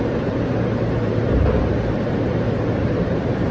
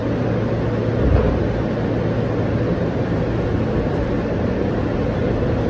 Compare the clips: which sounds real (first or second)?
second